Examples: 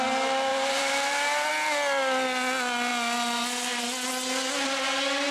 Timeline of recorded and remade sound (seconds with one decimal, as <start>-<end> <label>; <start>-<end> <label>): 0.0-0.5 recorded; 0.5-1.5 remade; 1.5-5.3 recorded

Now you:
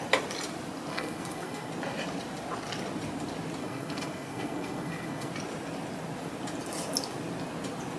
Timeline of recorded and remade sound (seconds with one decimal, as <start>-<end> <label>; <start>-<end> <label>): 0.0-0.9 recorded; 0.9-1.7 remade; 1.7-3.6 recorded; 3.6-5.3 remade; 5.3-8.0 recorded

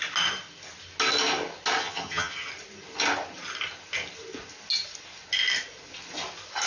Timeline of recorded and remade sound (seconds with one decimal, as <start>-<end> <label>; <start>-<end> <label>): 0.0-1.8 recorded; 1.8-2.5 remade; 2.5-6.7 recorded

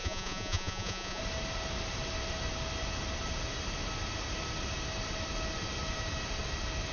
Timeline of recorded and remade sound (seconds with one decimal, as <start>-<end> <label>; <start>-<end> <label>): 0.0-1.2 remade; 1.2-6.9 recorded

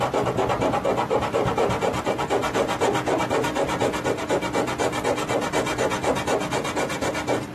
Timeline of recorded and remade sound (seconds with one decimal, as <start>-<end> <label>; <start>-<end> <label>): 0.0-0.9 recorded; 0.9-4.2 remade; 4.2-7.5 recorded

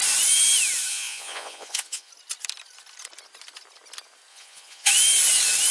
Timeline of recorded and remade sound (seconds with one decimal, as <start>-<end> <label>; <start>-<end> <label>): 0.0-0.9 recorded; 0.9-2.1 remade; 2.1-4.3 recorded; 4.3-4.9 remade; 4.9-5.7 recorded

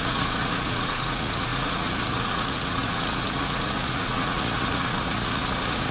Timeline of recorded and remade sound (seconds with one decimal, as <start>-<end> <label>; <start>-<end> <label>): 0.0-5.9 remade

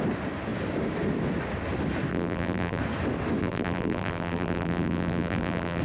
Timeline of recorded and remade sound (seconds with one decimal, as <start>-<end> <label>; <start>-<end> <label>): 0.0-2.1 recorded; 2.1-2.8 remade; 2.8-3.4 recorded; 3.4-5.8 remade